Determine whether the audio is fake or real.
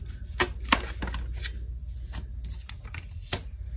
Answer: real